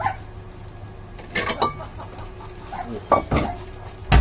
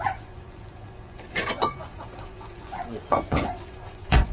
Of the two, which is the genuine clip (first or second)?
first